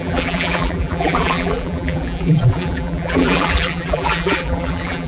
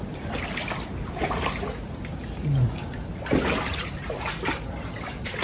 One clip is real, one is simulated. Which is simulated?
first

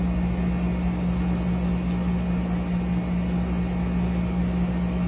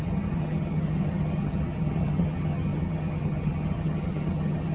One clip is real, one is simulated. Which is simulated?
second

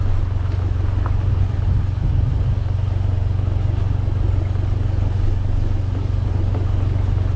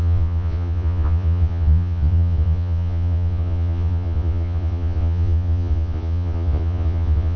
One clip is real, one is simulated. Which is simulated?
second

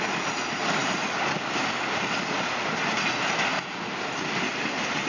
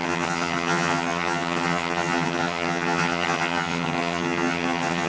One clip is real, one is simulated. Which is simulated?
second